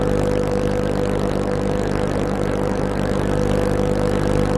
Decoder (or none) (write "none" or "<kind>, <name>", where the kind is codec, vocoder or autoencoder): none